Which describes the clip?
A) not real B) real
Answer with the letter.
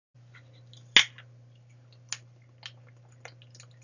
B